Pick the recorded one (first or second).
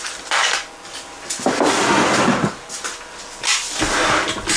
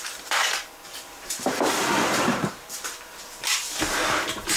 first